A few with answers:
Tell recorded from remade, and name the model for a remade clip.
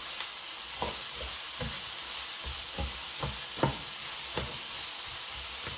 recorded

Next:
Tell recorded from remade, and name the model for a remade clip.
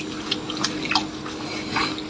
recorded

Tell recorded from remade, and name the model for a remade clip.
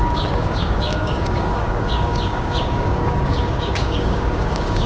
remade, codec, DAC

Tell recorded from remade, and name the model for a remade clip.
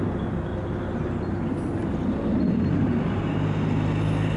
recorded